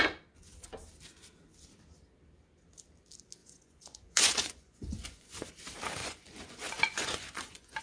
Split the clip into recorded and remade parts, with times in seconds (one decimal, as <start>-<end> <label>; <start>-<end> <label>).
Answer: 0.0-3.4 recorded; 3.4-5.5 remade; 5.5-6.0 recorded; 6.0-7.8 remade